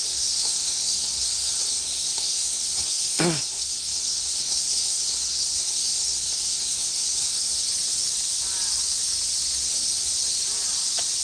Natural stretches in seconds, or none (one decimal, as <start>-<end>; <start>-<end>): 7.7-9.7; 10.1-11.2